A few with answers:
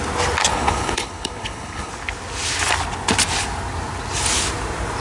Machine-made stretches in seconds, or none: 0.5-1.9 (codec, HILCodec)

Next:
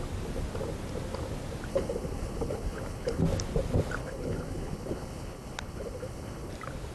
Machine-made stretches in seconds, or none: 1.7-3.2 (codec, HILCodec); 4.0-6.5

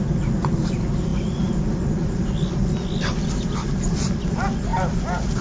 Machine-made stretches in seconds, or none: none